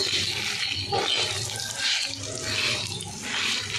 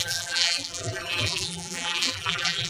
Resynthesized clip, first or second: second